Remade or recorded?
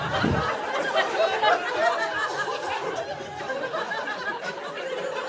recorded